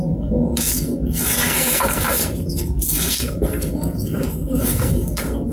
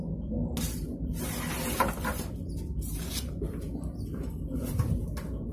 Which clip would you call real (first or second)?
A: second